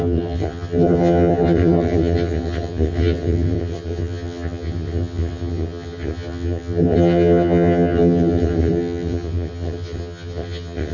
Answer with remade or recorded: remade